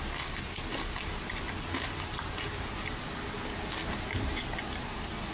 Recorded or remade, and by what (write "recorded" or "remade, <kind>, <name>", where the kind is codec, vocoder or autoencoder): recorded